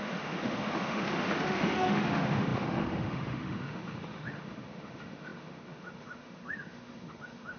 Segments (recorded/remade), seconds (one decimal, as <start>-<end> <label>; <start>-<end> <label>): 0.0-7.6 remade

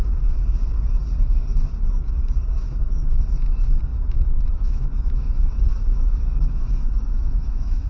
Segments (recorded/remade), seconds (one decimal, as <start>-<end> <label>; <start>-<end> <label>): 0.0-3.9 recorded; 3.9-7.9 remade

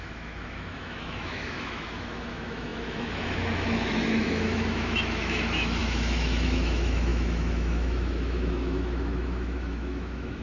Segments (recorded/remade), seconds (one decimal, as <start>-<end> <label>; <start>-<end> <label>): 0.0-10.4 remade

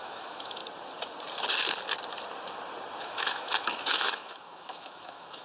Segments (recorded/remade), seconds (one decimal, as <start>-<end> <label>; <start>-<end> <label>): 0.0-0.6 remade; 0.6-3.0 recorded; 3.0-5.4 remade

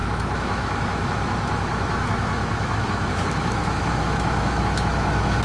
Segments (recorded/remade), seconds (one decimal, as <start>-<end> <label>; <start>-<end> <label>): 0.0-5.4 remade

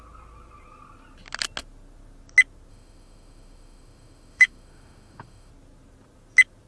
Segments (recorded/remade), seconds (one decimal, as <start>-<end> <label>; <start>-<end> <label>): 0.0-2.7 recorded; 2.7-5.5 remade; 5.5-6.7 recorded

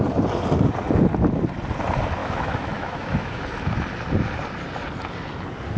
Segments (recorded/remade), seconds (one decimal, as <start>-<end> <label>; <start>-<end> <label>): 0.0-2.2 recorded; 2.2-3.4 remade; 3.4-5.8 recorded